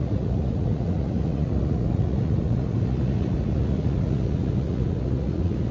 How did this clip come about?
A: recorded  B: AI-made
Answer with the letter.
B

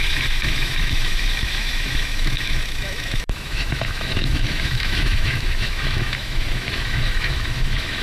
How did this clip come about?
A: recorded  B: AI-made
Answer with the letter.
B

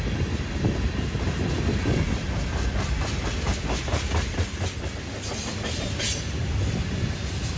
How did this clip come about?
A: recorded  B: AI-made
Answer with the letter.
A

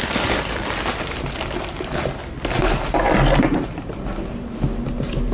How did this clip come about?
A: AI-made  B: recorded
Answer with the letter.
B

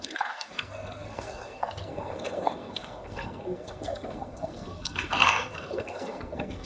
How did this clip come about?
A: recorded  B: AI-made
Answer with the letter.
B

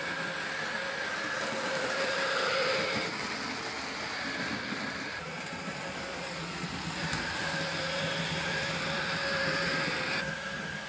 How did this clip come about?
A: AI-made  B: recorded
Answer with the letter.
B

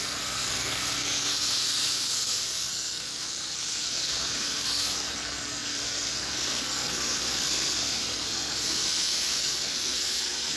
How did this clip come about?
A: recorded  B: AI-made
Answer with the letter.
B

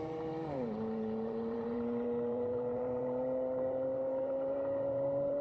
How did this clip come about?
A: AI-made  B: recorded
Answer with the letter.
A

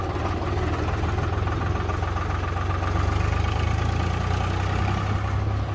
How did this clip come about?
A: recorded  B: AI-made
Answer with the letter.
A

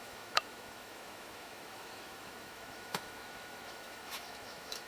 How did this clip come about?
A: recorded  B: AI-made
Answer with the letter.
B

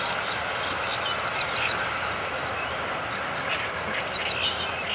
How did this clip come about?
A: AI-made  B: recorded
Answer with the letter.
B